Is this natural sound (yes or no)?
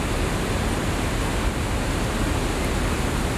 yes